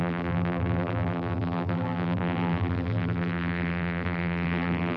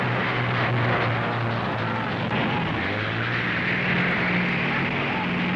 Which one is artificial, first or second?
first